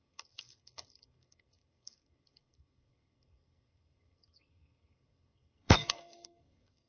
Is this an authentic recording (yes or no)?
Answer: no